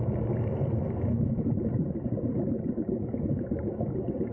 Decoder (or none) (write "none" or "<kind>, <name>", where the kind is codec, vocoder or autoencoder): none